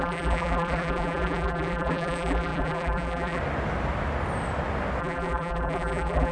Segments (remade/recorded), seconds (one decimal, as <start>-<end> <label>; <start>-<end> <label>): 0.0-3.4 remade; 3.4-5.0 recorded; 5.0-6.3 remade